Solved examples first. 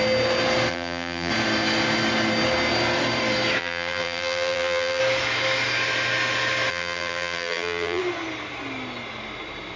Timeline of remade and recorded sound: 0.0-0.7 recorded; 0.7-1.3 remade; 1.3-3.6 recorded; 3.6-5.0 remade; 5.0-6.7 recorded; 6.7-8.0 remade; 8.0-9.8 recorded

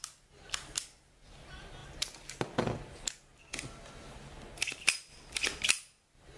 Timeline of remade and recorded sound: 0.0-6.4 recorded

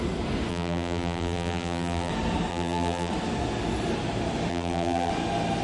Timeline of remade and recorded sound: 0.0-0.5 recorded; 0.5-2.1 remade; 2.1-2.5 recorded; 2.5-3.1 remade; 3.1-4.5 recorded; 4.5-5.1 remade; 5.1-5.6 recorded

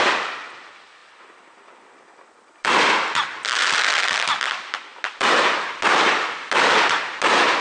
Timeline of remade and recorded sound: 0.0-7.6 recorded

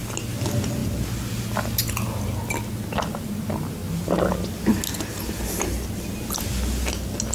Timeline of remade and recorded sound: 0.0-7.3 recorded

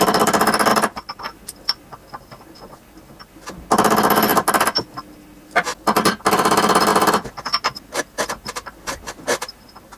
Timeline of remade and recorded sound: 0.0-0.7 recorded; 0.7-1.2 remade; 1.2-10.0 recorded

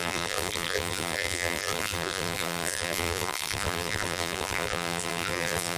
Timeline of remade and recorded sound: 0.0-5.8 remade